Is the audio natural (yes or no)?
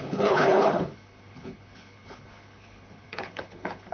no